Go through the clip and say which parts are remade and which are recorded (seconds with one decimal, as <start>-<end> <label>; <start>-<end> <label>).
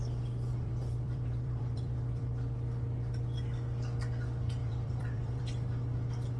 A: 0.0-0.5 recorded; 0.5-2.2 remade; 2.2-4.6 recorded; 4.6-5.4 remade; 5.4-6.4 recorded